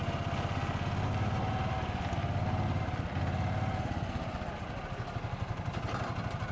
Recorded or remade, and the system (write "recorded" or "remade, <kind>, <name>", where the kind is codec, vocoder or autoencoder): recorded